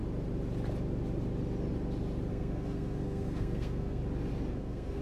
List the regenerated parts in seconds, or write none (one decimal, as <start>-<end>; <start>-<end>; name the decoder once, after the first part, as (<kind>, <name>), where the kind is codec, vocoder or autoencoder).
2.3-4.0 (codec, SNAC); 4.5-5.0